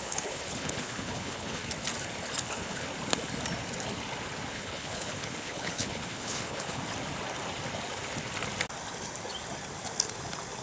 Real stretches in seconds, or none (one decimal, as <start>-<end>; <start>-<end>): 1.6-2.4; 2.9-4.5; 6.8-10.6